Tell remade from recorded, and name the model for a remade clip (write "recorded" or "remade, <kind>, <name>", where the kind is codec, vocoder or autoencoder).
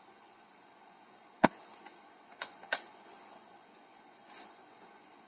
remade, vocoder, Vocos